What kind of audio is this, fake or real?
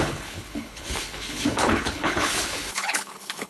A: fake